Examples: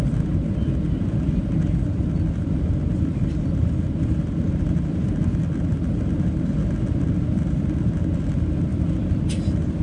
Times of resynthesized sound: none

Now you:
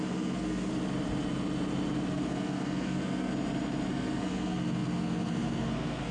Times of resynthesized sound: 0.0-0.7 (codec, SNAC); 2.1-3.3; 3.9-6.1

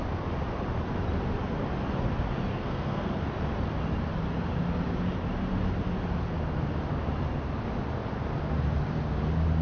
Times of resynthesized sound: 2.5-3.1 (codec, SNAC)

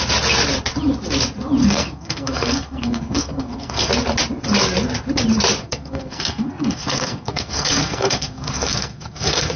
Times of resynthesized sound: 1.6-3.9 (codec, SNAC); 5.6-9.6

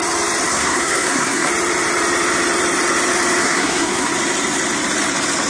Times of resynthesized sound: 0.5-1.5 (codec, SNAC); 3.4-4.1

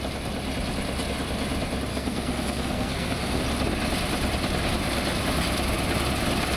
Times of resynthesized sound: 1.9-3.4 (codec, SNAC)

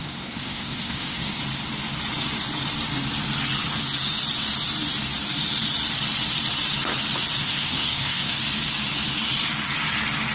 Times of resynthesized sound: 0.0-1.4 (codec, SNAC); 7.4-8.4